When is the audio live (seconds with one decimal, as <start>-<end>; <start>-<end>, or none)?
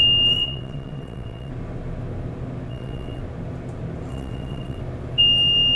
0.0-0.4; 1.5-2.7; 3.2-4.1; 4.8-5.8